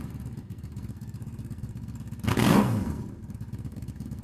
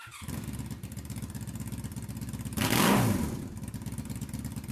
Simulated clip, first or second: first